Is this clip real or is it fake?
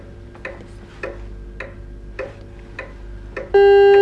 real